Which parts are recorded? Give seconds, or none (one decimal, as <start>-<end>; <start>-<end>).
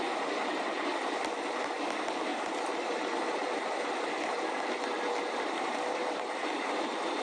0.0-2.3; 6.6-7.2